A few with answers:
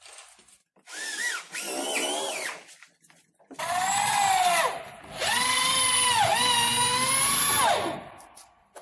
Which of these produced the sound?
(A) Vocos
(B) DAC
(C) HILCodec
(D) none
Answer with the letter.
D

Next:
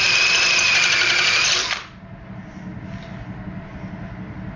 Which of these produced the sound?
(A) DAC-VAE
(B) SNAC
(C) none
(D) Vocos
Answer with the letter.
C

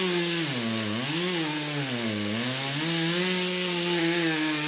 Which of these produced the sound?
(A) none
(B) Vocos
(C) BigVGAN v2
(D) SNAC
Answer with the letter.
A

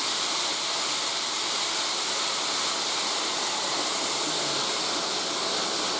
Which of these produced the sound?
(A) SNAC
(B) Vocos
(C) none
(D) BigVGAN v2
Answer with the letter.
C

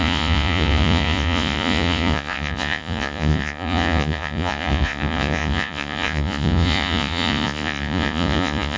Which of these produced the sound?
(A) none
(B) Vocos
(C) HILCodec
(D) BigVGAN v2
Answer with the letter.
B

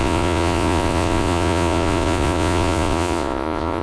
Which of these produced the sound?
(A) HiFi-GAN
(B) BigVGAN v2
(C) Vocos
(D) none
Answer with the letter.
C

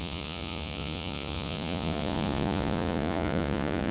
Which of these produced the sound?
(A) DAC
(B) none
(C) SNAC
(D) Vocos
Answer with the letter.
D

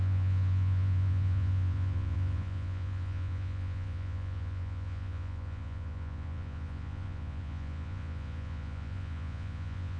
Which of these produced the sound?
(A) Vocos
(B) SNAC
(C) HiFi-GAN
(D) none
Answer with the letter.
A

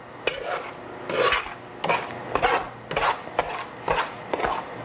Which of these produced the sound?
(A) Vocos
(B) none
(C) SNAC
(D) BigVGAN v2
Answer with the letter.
B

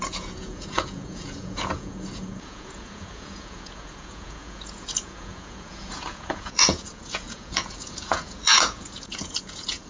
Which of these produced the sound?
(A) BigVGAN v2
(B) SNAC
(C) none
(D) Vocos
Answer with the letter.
D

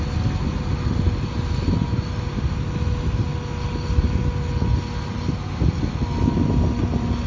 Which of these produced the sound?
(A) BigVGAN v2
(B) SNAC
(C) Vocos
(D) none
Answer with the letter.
D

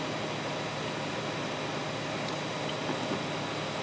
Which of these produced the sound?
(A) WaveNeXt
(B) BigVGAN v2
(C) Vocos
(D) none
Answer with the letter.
D